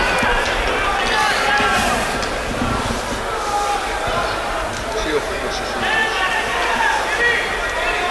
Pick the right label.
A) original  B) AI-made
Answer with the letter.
A